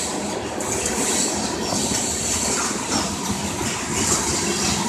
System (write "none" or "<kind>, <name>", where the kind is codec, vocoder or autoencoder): none